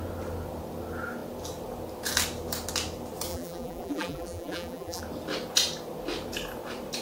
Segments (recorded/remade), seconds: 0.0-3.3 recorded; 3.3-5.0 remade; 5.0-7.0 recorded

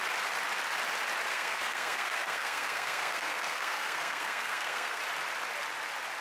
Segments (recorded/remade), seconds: 0.0-1.3 recorded; 1.3-5.0 remade; 5.0-6.2 recorded

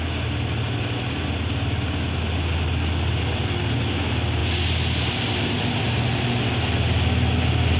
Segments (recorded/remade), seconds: 0.0-7.8 recorded

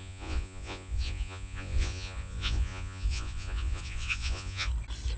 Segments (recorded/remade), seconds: 0.0-4.7 remade; 4.7-5.2 recorded

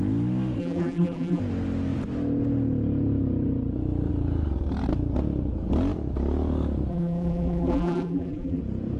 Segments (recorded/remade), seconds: 0.0-0.6 recorded; 0.6-1.4 remade; 1.4-6.9 recorded; 6.9-8.6 remade; 8.6-9.0 recorded

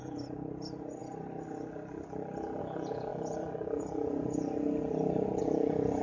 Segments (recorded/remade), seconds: 0.0-6.0 recorded

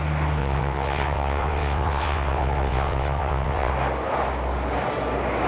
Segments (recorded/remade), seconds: 0.0-0.4 recorded; 0.4-3.7 remade; 3.7-5.5 recorded

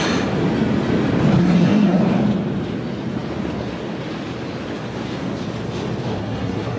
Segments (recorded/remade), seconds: 0.0-1.4 recorded; 1.4-2.0 remade; 2.0-6.2 recorded; 6.2-6.8 remade